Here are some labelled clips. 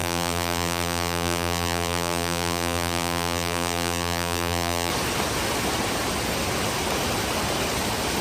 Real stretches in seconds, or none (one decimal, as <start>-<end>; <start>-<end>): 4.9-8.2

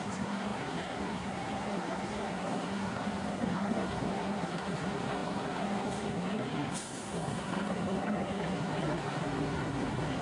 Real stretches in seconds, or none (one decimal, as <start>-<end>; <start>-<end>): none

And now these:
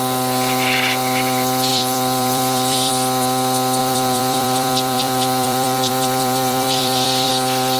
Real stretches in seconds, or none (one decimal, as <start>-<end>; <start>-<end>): 0.0-1.7; 2.9-3.8; 7.3-7.8

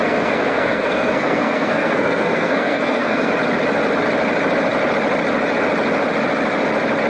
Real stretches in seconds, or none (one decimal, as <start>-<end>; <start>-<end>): 3.3-7.1